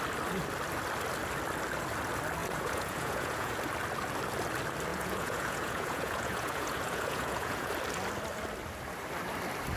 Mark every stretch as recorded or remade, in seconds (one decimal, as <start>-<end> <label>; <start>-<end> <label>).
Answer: 0.0-2.4 recorded; 2.4-3.6 remade; 3.6-4.9 recorded; 4.9-7.7 remade; 7.7-9.8 recorded